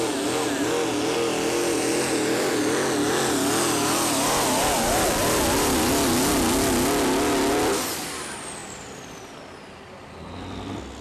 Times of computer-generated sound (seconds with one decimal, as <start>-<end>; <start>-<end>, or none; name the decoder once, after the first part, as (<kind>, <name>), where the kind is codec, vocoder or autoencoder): 1.6-2.5 (vocoder, BigVGAN v2); 8.6-9.3